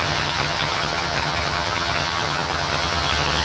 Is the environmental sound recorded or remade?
remade